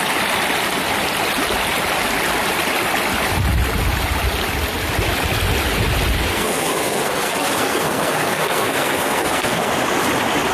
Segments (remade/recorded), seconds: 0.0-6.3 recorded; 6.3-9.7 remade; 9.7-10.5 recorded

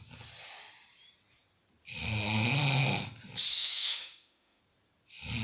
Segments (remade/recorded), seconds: 0.0-3.5 recorded; 3.5-4.6 remade; 4.6-5.4 recorded

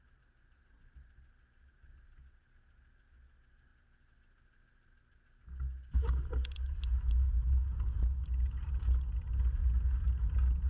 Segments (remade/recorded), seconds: 0.0-10.7 recorded

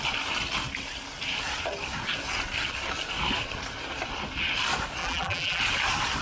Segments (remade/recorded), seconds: 0.0-5.0 recorded; 5.0-5.6 remade; 5.6-6.2 recorded

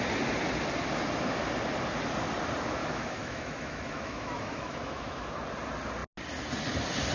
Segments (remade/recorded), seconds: 0.0-2.8 recorded; 2.8-5.3 remade; 5.3-7.1 recorded

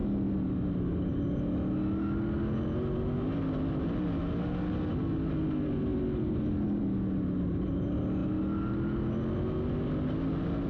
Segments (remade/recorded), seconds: 0.0-10.7 recorded

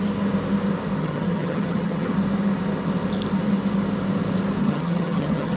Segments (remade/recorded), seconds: 0.0-1.0 recorded; 1.0-2.1 remade; 2.1-4.6 recorded; 4.6-5.6 remade

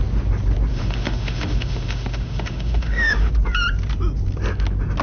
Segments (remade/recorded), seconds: 0.0-0.7 recorded; 0.7-3.3 remade; 3.3-5.0 recorded